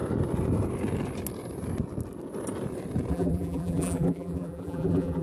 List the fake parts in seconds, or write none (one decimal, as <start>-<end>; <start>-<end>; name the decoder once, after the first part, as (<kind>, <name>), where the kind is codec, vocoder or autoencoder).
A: 3.1-5.2 (vocoder, BigVGAN v2)